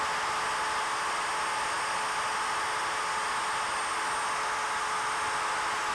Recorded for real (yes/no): yes